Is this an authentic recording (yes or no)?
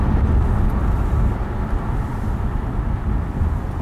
yes